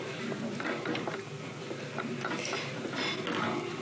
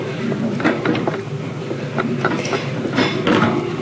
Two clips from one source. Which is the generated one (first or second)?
second